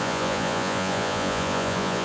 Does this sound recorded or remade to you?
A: remade